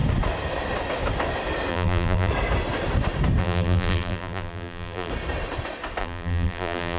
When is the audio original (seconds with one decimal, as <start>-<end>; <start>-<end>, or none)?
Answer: 0.0-1.7; 2.3-3.4; 5.1-6.0